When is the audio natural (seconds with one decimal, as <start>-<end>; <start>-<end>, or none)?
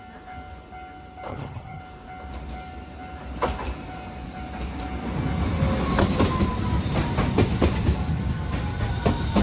0.0-1.3; 1.8-9.4